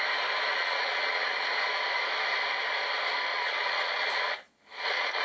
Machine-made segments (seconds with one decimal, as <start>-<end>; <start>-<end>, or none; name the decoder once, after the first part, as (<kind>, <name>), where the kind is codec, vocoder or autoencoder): 0.5-1.6 (vocoder, Vocos); 3.3-5.2